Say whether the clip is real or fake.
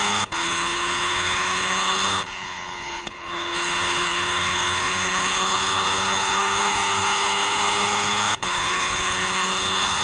fake